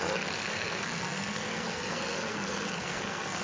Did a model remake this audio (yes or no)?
yes